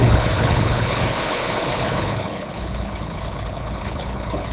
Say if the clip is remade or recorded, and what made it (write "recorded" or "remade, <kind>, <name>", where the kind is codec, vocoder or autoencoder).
remade, codec, HILCodec